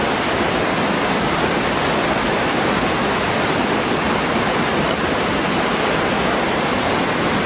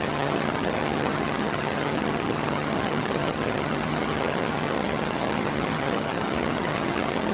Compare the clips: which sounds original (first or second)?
first